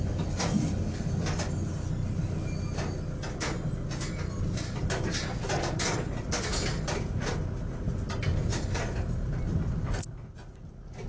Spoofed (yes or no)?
no